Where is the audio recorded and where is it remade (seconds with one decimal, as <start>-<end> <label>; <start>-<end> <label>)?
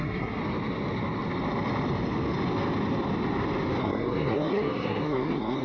0.0-0.4 remade; 0.4-3.8 recorded; 3.8-5.6 remade